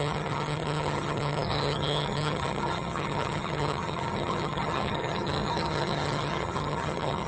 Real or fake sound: fake